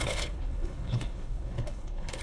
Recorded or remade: remade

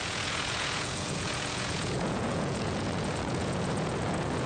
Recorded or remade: remade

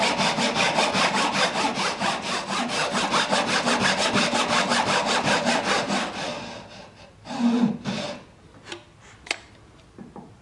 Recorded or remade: recorded